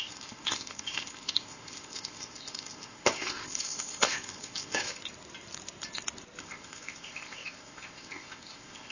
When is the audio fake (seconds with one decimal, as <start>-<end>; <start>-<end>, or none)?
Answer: 0.0-5.0; 6.4-8.9